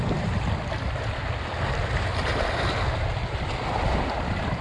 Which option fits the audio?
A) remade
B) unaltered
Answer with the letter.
B